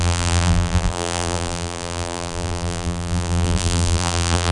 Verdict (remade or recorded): remade